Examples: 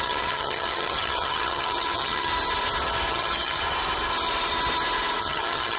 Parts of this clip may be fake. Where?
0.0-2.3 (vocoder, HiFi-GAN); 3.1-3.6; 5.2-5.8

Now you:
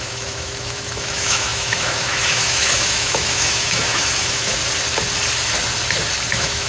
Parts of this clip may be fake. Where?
0.0-4.6 (autoencoder, DAC-VAE); 6.3-6.7

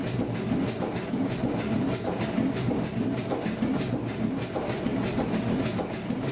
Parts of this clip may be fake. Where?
none